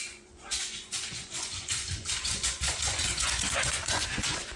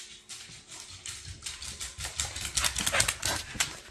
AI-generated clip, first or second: first